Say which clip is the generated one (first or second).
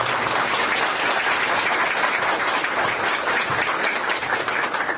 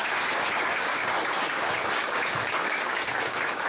second